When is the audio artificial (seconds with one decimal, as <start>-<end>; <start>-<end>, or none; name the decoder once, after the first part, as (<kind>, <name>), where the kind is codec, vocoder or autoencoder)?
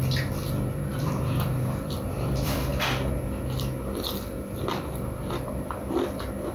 0.9-2.7 (vocoder, BigVGAN v2); 4.6-6.5